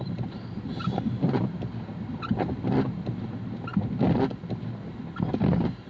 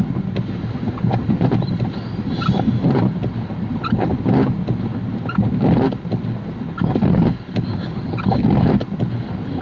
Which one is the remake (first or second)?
first